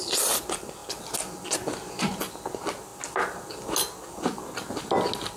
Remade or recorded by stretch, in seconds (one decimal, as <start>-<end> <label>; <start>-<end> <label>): 0.0-5.4 recorded